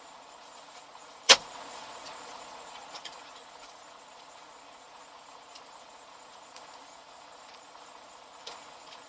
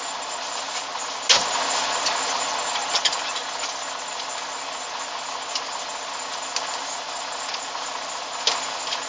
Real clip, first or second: second